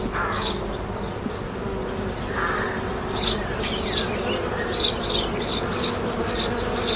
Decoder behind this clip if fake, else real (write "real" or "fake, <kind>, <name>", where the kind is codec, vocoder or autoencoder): real